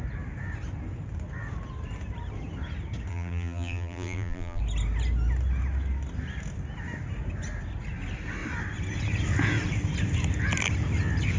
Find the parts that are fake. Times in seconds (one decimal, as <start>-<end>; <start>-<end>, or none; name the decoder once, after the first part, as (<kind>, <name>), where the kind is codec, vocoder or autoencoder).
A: 3.1-4.6 (vocoder, BigVGAN v2)